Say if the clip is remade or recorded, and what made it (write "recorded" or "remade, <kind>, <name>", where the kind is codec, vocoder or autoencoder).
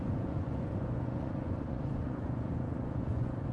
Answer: remade, vocoder, Vocos